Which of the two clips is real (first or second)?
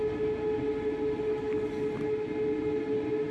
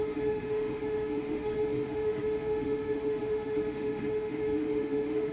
first